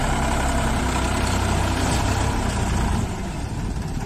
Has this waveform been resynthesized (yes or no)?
no